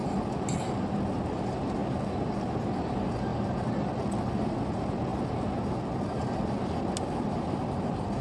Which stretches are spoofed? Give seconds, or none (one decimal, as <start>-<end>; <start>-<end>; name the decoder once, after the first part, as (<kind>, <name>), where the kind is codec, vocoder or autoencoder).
none